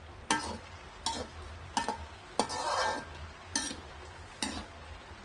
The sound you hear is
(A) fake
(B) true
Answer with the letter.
B